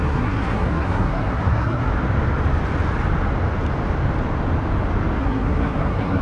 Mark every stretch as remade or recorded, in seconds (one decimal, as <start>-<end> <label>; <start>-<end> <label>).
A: 0.0-1.9 remade; 1.9-5.2 recorded; 5.2-6.2 remade